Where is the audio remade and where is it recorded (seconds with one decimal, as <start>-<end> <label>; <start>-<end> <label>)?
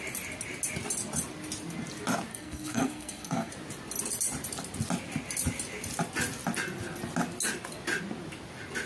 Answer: 0.0-2.3 recorded; 2.3-3.5 remade; 3.5-8.9 recorded